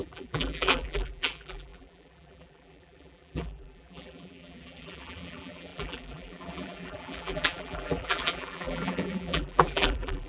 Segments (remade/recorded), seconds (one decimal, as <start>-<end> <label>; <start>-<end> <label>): 0.0-10.3 remade